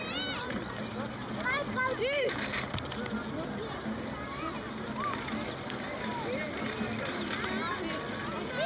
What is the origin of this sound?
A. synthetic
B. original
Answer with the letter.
B